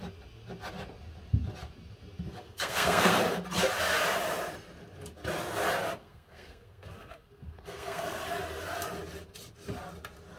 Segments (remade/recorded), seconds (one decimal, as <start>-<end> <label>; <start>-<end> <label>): 0.0-2.3 recorded; 2.3-3.1 remade; 3.1-6.0 recorded; 6.0-8.2 remade; 8.2-10.4 recorded